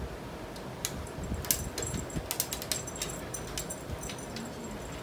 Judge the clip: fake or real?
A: real